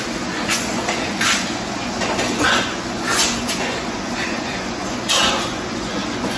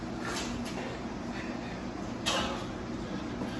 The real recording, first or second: second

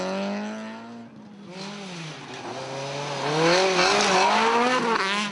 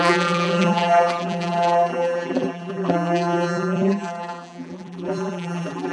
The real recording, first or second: first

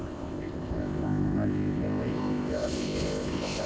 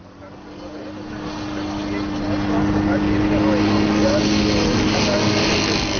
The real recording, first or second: second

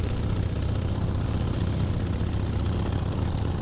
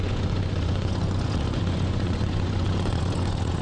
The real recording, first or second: first